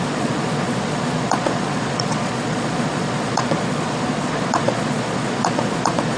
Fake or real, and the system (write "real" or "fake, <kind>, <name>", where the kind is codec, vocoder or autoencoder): fake, vocoder, Vocos